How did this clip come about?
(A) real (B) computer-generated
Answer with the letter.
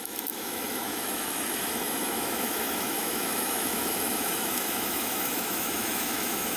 B